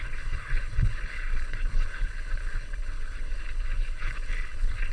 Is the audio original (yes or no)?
no